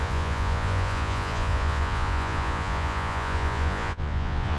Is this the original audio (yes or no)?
no